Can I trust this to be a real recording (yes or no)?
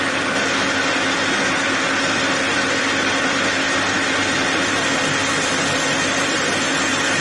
yes